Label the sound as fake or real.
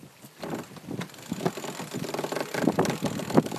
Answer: real